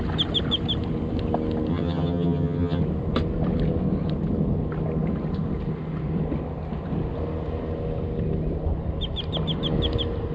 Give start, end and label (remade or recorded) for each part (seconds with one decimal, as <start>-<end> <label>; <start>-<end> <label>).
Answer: 0.0-1.7 recorded; 1.7-2.8 remade; 2.8-10.3 recorded